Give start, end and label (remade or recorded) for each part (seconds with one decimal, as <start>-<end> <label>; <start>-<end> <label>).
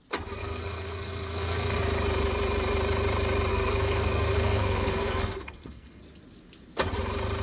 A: 0.0-0.4 recorded; 0.4-1.8 remade; 1.8-3.5 recorded; 3.5-6.0 remade; 6.0-7.4 recorded